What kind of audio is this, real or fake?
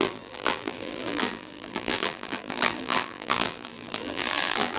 fake